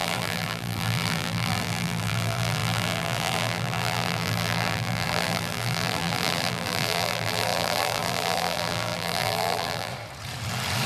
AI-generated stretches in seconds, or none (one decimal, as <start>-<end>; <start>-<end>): 0.0-9.9